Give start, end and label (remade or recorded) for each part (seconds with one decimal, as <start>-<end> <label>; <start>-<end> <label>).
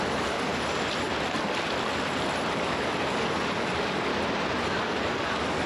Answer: 0.0-0.5 remade; 0.5-2.5 recorded; 2.5-4.1 remade; 4.1-4.6 recorded; 4.6-5.7 remade